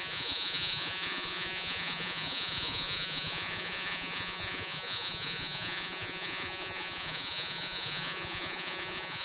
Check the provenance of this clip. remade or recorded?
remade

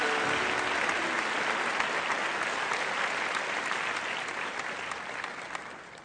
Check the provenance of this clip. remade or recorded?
recorded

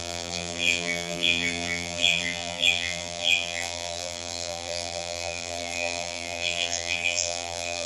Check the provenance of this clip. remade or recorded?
remade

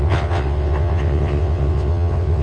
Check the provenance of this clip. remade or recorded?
remade